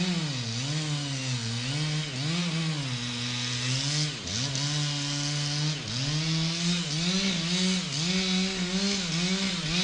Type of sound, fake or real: real